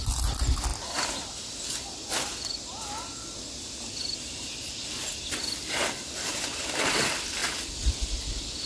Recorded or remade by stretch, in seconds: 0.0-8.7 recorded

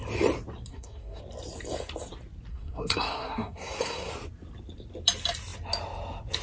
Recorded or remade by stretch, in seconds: 0.0-0.7 recorded; 0.7-1.2 remade; 1.2-2.5 recorded; 2.5-4.1 remade; 4.1-6.4 recorded

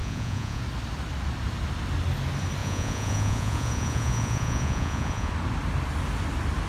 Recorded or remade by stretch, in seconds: 0.0-0.6 remade; 0.6-2.6 recorded; 2.6-5.3 remade; 5.3-6.7 recorded

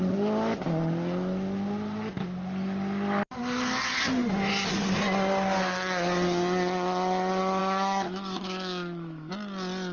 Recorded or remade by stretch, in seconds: 0.0-7.6 recorded; 7.6-9.3 remade; 9.3-9.9 recorded

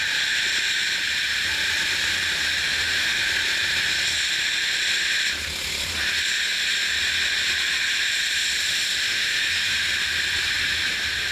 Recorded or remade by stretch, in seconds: 0.0-2.6 recorded; 2.6-3.2 remade; 3.2-9.1 recorded; 9.1-9.9 remade; 9.9-11.3 recorded

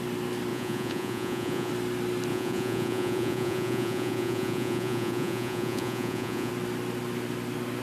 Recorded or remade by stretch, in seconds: 0.0-0.5 recorded; 0.5-1.7 remade; 1.7-2.3 recorded; 2.3-6.5 remade; 6.5-7.8 recorded

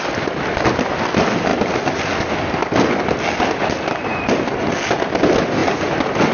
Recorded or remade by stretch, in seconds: 0.0-4.1 recorded; 4.1-4.7 remade; 4.7-5.6 recorded; 5.6-6.3 remade